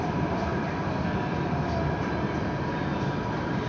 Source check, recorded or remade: remade